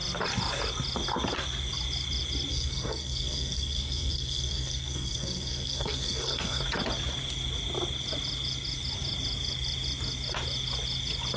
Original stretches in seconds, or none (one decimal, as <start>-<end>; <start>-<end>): 0.0-2.5; 6.6-11.4